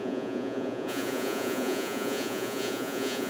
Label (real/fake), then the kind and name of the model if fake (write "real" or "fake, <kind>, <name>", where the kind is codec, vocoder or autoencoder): fake, vocoder, Vocos